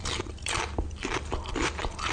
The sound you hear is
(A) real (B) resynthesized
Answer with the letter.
B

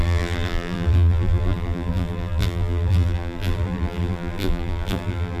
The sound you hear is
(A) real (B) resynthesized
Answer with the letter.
B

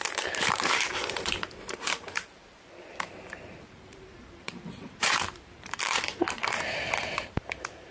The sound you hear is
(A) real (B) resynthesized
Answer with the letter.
B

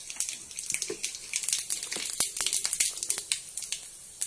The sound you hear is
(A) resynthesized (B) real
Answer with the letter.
B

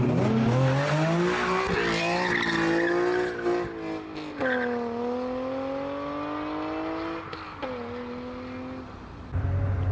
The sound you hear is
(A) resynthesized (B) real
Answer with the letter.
B